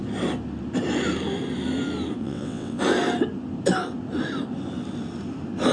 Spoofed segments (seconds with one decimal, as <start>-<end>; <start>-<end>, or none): 2.2-2.8